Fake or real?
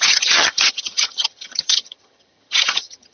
fake